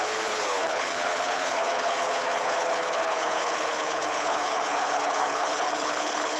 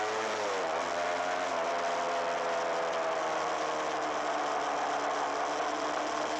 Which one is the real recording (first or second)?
second